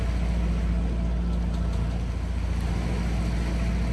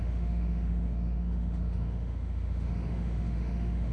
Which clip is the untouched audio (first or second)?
first